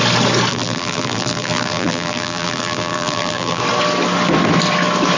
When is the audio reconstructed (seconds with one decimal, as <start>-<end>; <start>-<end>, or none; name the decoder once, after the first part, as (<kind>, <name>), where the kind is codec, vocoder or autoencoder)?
0.5-3.6 (vocoder, BigVGAN v2)